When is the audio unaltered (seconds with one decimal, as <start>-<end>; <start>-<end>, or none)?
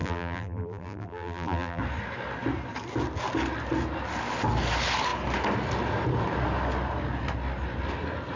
1.8-8.4